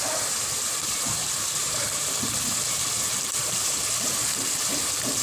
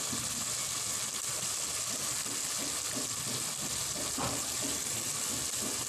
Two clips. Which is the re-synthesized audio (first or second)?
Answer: first